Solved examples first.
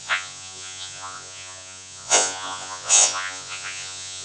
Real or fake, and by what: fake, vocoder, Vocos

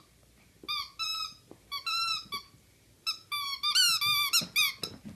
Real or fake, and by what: real